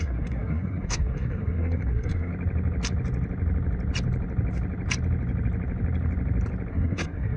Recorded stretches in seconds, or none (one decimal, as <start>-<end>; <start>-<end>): 2.3-6.7